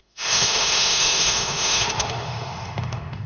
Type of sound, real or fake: fake